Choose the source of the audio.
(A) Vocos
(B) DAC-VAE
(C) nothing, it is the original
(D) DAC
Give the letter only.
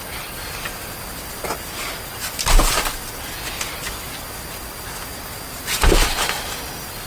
C